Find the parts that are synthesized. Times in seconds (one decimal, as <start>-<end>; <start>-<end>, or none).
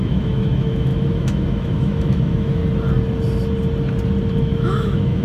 0.0-2.6; 4.4-5.2